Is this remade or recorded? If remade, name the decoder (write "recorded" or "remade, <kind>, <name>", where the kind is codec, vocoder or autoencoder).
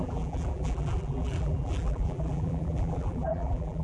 remade, vocoder, BigVGAN v2